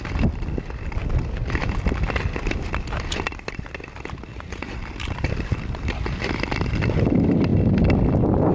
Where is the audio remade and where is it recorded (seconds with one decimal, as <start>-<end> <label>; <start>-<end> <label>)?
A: 0.0-4.3 recorded; 4.3-4.8 remade; 4.8-8.5 recorded